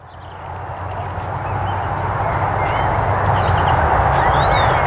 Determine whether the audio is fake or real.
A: real